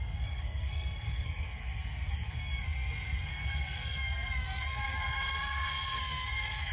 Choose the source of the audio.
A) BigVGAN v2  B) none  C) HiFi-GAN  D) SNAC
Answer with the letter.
D